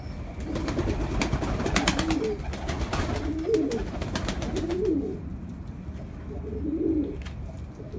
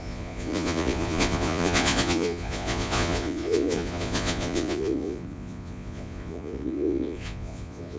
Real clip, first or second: first